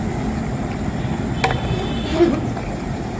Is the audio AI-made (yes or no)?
no